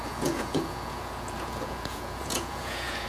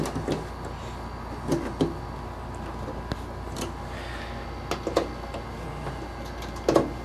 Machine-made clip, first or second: first